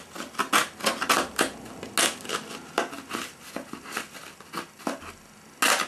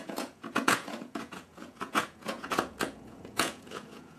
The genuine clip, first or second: first